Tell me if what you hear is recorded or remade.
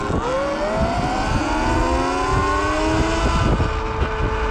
recorded